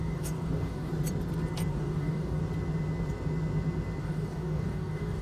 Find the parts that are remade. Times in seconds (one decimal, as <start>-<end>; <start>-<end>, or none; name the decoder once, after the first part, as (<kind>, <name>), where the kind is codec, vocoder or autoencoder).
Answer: 0.0-0.9 (codec, DAC); 1.7-2.4; 4.0-5.2